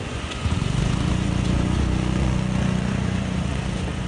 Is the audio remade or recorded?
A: remade